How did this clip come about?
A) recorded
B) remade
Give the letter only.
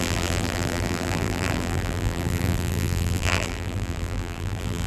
B